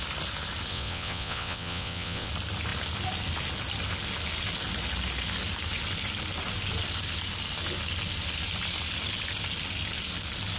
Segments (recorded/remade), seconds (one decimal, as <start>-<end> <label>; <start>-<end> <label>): 0.0-0.7 recorded; 0.7-2.3 remade; 2.3-10.6 recorded